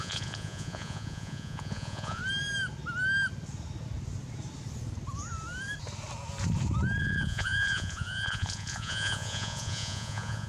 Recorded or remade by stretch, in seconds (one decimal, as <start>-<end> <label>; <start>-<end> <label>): 0.0-2.2 remade; 2.2-7.0 recorded; 7.0-10.5 remade